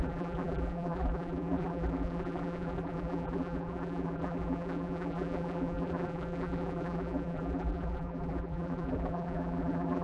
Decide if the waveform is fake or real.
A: fake